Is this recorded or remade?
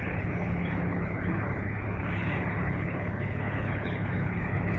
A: remade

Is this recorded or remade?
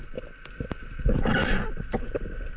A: recorded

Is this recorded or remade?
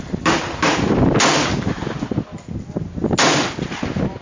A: recorded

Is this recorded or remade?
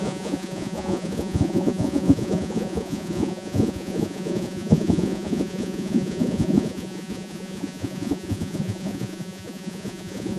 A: remade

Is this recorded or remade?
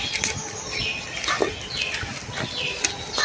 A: recorded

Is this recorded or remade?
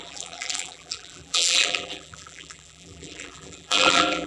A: remade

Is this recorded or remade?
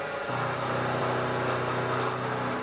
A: recorded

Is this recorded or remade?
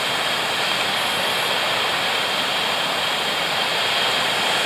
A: recorded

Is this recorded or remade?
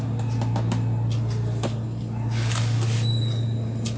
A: recorded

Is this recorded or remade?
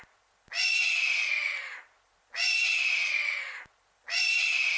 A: recorded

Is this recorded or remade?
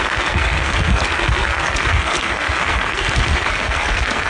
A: remade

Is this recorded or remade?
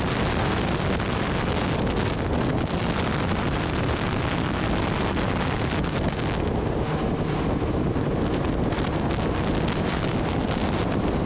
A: recorded